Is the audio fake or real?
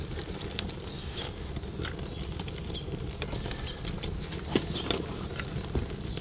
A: fake